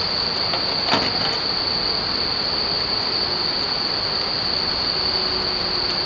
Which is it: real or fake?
real